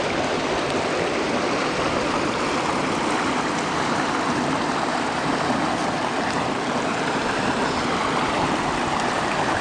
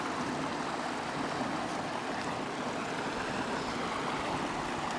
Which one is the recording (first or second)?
second